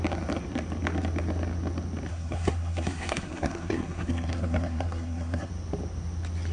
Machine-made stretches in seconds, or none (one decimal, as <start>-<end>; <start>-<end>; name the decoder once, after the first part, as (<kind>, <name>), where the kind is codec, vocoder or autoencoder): 2.1-5.5 (codec, SNAC)